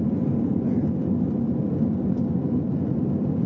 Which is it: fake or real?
real